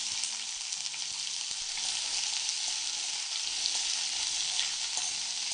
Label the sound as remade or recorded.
recorded